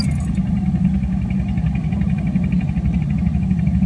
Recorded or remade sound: recorded